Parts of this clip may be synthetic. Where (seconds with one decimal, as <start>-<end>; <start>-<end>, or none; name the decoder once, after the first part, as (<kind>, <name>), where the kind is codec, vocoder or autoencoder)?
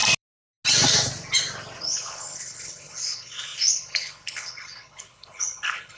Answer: 1.8-6.0 (codec, HILCodec)